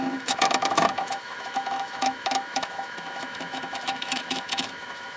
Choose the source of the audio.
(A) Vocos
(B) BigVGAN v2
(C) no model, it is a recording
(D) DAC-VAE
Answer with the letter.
D